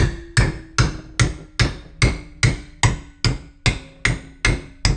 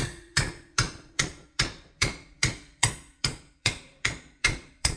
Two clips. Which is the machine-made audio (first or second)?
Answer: second